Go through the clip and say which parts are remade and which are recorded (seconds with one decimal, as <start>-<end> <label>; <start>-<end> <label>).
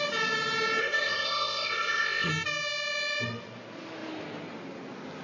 0.0-0.8 recorded; 0.8-2.3 remade; 2.3-5.2 recorded